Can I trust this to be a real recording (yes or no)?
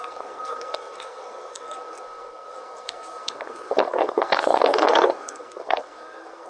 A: no